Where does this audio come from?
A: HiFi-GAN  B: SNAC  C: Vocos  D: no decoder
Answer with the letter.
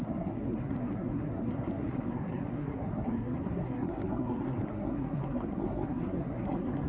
B